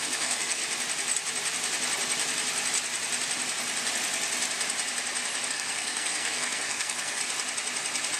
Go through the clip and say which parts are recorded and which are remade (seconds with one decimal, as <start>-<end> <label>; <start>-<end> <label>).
0.0-0.6 remade; 0.6-5.5 recorded; 5.5-7.2 remade; 7.2-8.2 recorded